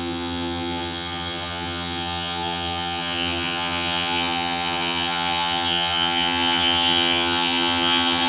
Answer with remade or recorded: remade